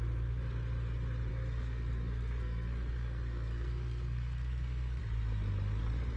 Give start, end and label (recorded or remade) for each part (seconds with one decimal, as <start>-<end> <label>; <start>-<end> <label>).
0.0-1.3 recorded; 1.3-5.0 remade; 5.0-6.2 recorded